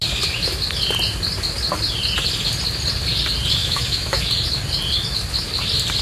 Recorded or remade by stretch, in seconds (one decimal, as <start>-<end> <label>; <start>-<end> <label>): 0.0-3.6 recorded; 3.6-4.2 remade; 4.2-6.0 recorded